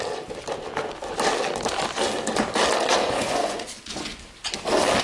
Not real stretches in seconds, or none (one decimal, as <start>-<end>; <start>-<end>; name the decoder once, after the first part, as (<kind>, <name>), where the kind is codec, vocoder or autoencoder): 3.0-4.2 (vocoder, Vocos)